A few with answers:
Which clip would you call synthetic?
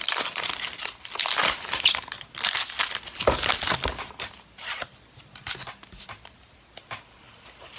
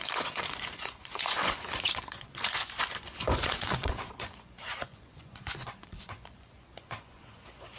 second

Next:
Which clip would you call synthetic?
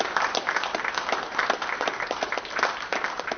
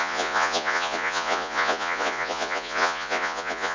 second